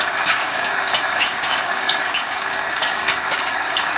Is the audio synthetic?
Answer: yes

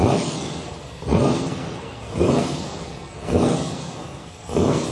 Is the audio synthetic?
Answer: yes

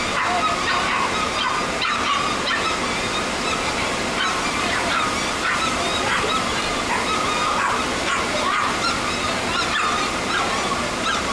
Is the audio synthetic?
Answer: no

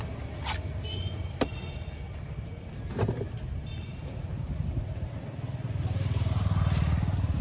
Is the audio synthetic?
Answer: no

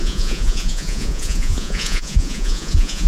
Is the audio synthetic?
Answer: yes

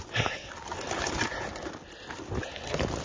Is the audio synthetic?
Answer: no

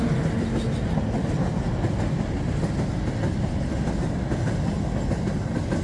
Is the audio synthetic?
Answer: no